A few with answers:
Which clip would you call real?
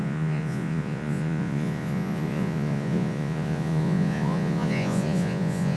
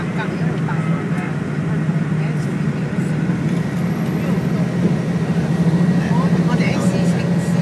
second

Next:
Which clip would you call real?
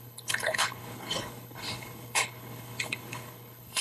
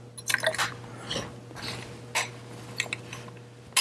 second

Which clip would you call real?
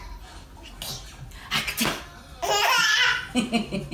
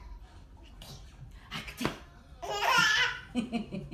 first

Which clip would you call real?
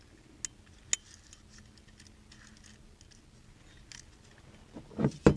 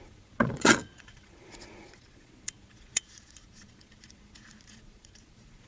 first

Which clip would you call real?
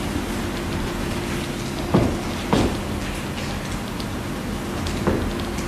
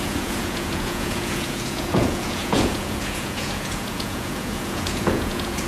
first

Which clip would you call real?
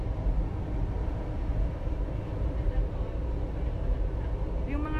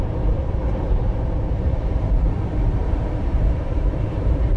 first